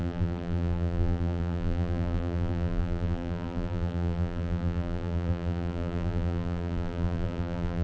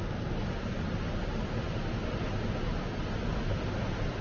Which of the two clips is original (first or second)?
second